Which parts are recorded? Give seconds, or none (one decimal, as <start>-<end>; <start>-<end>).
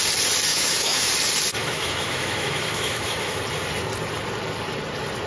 0.0-0.5; 1.1-1.6; 3.4-5.3